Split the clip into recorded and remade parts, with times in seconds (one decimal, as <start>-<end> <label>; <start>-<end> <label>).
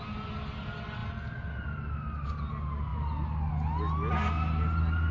0.0-5.1 recorded